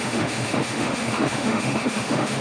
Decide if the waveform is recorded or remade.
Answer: remade